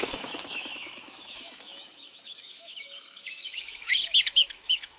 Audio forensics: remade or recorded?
remade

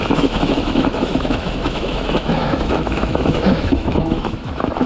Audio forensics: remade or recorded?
remade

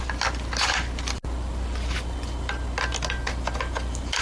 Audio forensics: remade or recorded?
recorded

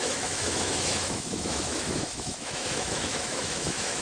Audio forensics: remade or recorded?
remade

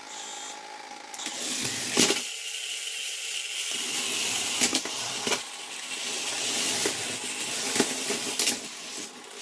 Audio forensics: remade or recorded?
recorded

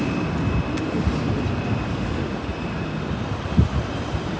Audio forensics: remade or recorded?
recorded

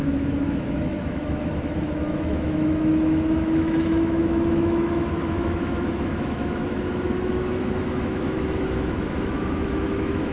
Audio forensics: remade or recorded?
remade